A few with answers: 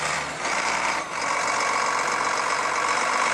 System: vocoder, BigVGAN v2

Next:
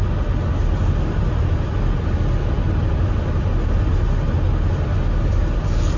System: none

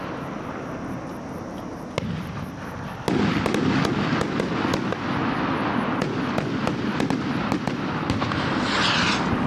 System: none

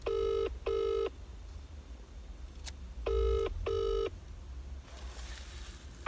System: none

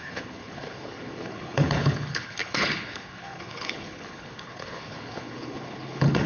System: codec, HILCodec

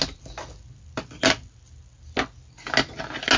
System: none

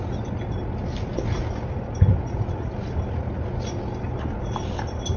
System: none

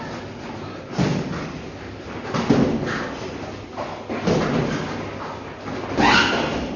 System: none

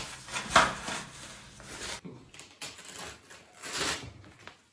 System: none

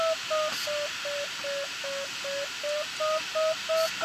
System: none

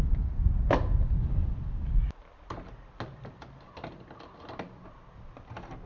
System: none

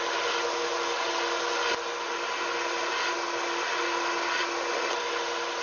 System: none